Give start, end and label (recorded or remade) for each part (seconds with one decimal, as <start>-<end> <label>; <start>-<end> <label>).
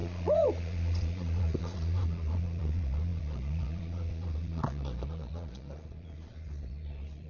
0.0-7.3 remade